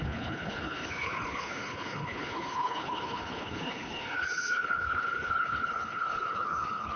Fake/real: fake